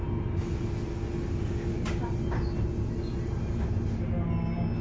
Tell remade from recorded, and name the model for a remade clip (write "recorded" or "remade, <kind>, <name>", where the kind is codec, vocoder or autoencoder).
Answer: recorded